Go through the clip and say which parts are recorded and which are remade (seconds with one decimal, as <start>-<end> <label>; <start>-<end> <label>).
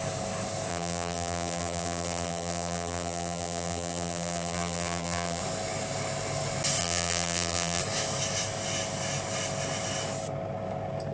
0.0-0.7 recorded; 0.7-5.4 remade; 5.4-6.8 recorded; 6.8-7.8 remade; 7.8-11.1 recorded